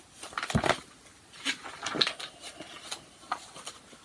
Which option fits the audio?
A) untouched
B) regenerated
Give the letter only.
A